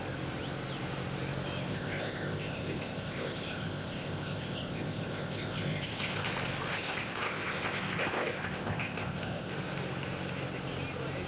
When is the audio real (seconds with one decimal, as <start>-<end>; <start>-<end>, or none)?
0.0-1.7; 6.3-6.7; 9.5-11.3